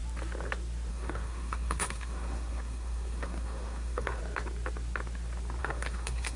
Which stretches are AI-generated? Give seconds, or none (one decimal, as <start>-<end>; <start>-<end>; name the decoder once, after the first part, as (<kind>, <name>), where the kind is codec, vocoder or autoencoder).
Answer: 0.9-4.2 (codec, SNAC); 5.6-6.4